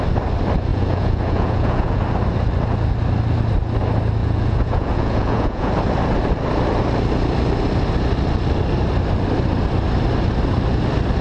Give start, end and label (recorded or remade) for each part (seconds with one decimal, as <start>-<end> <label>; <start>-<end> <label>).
0.0-0.7 recorded; 0.7-2.0 remade; 2.0-4.2 recorded; 4.2-5.7 remade; 5.7-11.2 recorded